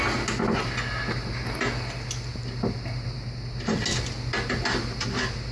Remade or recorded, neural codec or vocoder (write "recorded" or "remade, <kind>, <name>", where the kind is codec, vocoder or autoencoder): recorded